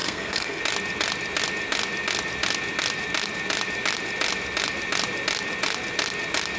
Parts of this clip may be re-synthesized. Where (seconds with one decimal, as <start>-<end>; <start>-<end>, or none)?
0.0-0.6